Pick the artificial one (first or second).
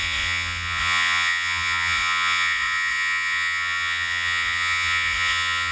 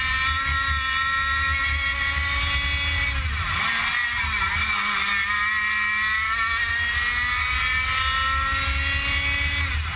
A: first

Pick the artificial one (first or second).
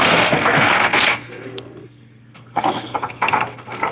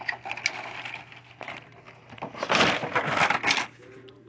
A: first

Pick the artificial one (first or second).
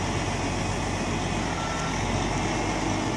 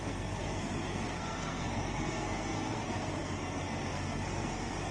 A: second